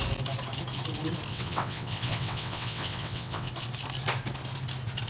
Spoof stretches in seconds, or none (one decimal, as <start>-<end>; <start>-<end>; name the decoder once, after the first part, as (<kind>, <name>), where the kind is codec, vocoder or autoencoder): 1.3-3.5 (vocoder, WaveNeXt)